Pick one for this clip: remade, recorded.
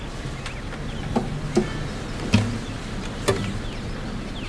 recorded